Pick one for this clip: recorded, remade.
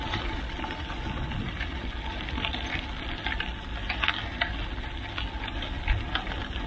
recorded